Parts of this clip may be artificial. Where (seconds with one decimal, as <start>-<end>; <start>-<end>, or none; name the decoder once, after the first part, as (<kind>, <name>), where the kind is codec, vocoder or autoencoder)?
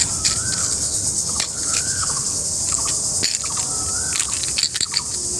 0.6-2.6 (codec, HILCodec)